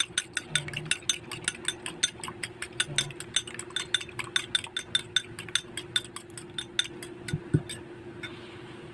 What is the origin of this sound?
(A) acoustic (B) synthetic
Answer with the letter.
A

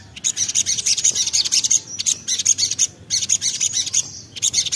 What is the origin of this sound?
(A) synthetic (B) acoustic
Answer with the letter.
B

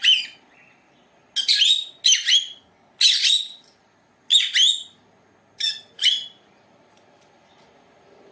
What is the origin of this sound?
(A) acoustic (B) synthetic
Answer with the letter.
A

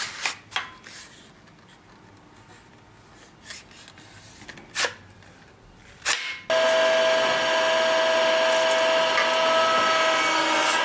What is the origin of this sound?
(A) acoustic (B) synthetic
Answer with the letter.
A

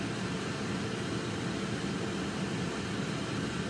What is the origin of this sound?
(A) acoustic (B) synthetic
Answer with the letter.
A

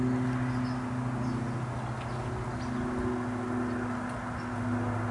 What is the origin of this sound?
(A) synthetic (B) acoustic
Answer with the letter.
B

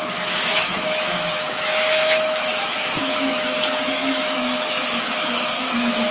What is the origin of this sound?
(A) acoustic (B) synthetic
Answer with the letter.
B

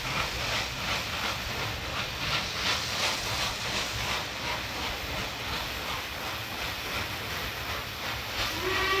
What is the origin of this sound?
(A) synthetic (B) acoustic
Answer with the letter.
B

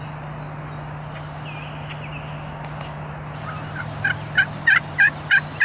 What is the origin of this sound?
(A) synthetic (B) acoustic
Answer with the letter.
B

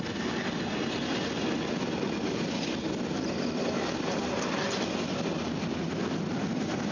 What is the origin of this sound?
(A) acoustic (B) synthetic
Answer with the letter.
A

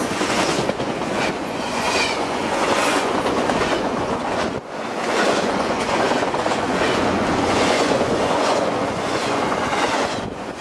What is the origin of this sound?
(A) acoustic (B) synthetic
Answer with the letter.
B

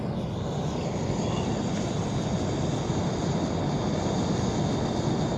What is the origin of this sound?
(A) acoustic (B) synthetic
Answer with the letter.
A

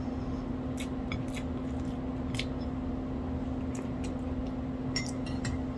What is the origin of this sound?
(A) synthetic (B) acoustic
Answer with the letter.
B